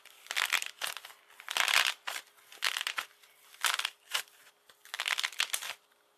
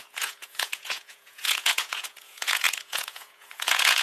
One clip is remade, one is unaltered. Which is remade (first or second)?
second